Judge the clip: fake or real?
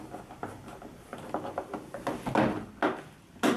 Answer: real